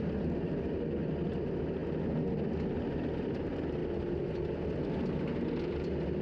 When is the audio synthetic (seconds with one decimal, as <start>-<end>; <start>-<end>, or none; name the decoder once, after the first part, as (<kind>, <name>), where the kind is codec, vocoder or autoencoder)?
none

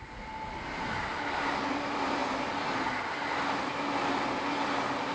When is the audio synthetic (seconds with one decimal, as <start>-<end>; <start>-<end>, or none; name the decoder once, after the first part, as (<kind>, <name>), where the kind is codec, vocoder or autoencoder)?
none